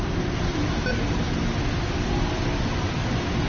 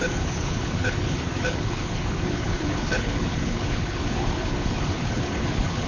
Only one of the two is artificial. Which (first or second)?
second